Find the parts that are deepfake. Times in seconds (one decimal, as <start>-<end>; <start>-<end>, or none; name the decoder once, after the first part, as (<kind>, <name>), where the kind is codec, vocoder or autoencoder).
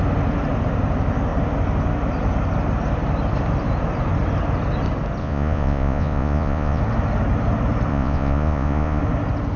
5.2-6.8 (vocoder, Vocos); 7.9-9.0